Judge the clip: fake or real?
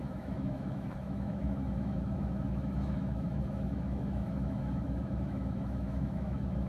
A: fake